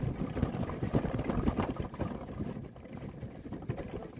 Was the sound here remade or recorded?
recorded